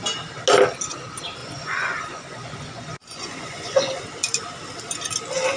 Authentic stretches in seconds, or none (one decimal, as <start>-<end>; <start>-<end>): 0.0-1.4; 4.0-5.6